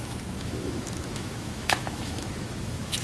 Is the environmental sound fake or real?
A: fake